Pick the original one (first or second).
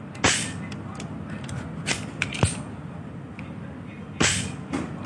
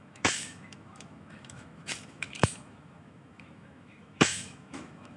first